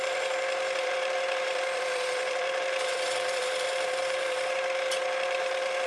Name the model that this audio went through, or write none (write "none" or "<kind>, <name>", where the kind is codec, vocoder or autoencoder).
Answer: vocoder, BigVGAN v2